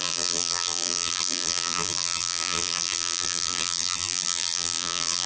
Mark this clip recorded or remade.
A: remade